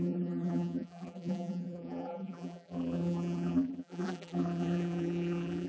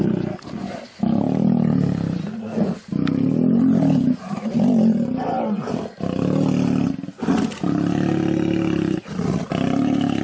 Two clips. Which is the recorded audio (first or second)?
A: second